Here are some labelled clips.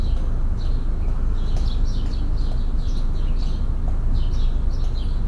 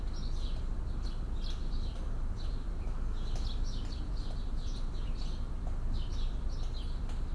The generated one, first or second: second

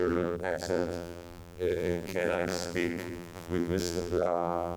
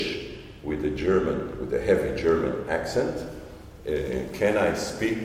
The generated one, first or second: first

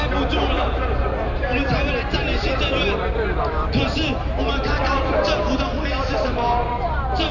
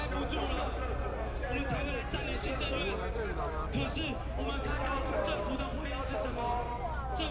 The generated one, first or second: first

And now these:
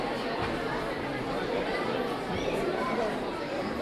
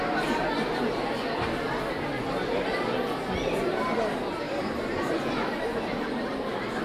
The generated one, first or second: first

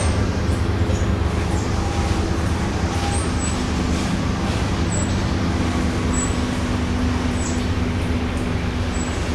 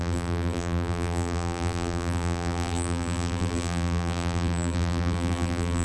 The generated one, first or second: second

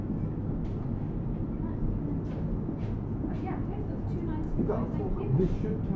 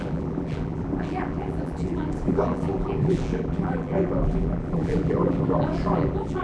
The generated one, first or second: second